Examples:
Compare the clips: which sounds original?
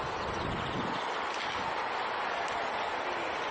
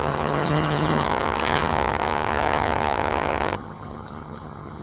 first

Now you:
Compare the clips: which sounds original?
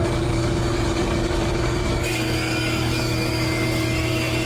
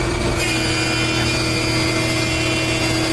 second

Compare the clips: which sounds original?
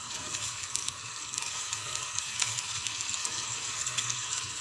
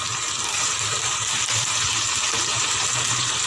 second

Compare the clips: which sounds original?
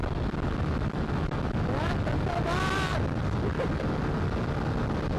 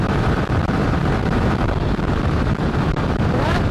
first